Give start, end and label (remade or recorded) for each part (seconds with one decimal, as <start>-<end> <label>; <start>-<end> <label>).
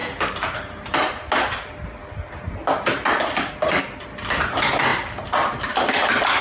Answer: 0.0-6.4 recorded